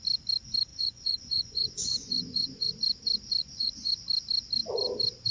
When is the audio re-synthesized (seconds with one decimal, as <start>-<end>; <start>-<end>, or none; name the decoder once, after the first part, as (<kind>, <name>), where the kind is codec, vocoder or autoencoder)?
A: 0.7-2.7 (vocoder, Vocos); 3.4-3.9